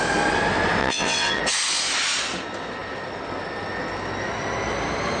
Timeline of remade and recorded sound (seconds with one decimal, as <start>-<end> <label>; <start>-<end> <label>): 0.0-0.8 recorded; 0.8-1.4 remade; 1.4-5.2 recorded